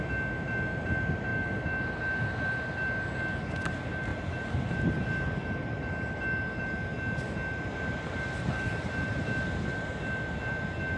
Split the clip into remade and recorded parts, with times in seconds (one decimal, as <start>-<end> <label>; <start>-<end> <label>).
0.0-11.0 recorded

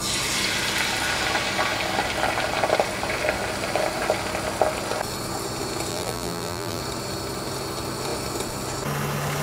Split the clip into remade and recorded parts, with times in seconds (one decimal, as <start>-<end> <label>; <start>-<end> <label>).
0.0-5.9 recorded; 5.9-6.8 remade; 6.8-9.4 recorded

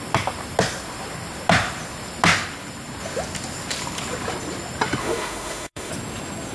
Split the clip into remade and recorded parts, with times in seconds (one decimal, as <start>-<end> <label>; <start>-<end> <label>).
0.0-5.0 recorded; 5.0-5.9 remade; 5.9-6.5 recorded

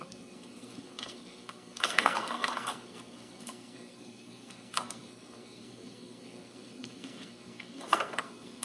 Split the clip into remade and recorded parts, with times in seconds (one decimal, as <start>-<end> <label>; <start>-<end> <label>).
0.0-8.6 remade

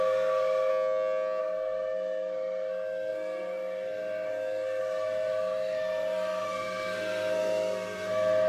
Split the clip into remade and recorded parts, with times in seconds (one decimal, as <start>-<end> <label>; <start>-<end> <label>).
0.0-0.7 remade; 0.7-1.4 recorded; 1.4-8.5 remade